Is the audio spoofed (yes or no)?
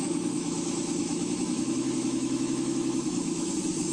yes